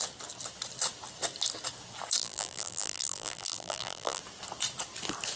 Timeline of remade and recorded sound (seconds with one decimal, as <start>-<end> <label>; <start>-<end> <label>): 0.0-2.2 recorded; 2.2-4.2 remade; 4.2-5.4 recorded